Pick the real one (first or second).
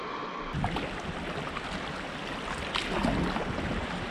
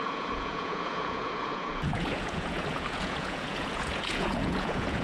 first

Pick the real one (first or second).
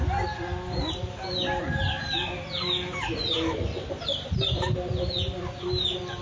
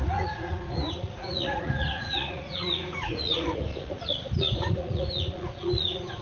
first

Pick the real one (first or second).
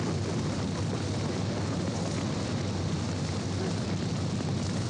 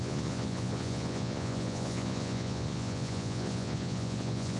first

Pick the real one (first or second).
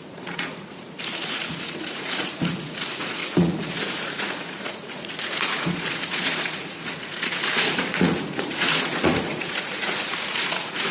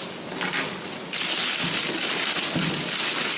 second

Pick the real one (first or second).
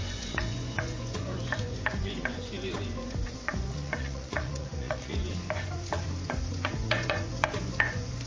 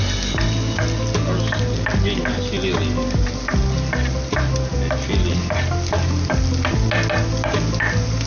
second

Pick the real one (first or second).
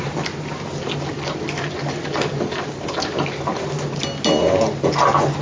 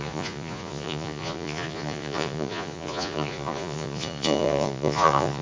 first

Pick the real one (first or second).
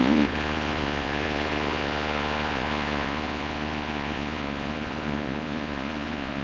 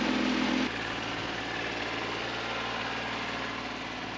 second